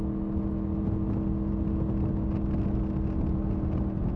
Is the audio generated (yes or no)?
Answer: no